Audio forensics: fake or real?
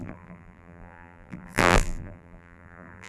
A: fake